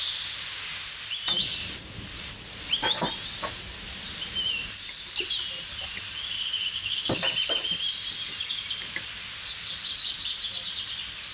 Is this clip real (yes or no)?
no